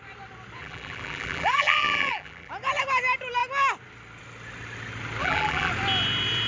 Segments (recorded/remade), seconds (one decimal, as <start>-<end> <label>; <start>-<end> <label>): 0.0-0.6 recorded; 0.6-2.5 remade; 2.5-5.2 recorded; 5.2-5.7 remade; 5.7-6.5 recorded